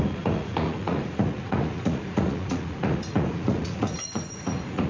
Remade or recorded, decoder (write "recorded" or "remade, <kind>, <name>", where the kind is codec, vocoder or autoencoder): remade, vocoder, Vocos